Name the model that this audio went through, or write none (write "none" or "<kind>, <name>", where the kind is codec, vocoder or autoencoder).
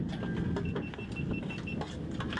none